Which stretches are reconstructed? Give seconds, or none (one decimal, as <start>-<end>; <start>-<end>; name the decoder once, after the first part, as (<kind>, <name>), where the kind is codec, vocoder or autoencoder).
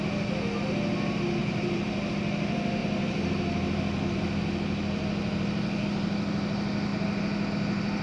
1.4-2.1 (vocoder, BigVGAN v2); 2.8-4.2